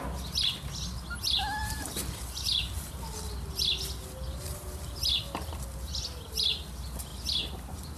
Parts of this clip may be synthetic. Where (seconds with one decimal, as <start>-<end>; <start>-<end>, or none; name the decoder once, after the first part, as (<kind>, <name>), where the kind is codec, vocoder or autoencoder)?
1.6-2.9 (vocoder, BigVGAN v2); 4.5-5.2